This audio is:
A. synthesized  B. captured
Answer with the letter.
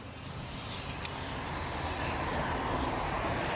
B